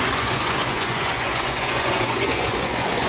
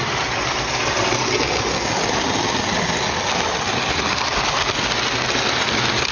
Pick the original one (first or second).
second